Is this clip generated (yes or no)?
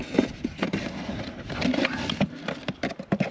yes